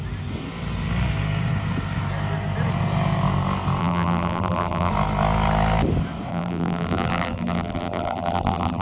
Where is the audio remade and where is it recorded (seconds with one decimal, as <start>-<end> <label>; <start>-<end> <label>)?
0.0-3.8 recorded; 3.8-4.9 remade; 4.9-6.3 recorded; 6.3-8.8 remade